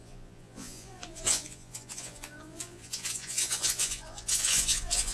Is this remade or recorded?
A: remade